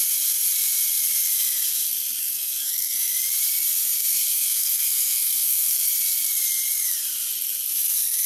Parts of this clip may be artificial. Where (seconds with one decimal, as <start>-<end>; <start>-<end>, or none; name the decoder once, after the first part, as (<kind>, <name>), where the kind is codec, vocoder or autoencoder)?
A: 2.2-3.1 (codec, SNAC); 4.1-5.9